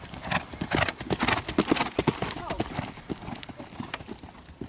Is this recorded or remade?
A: recorded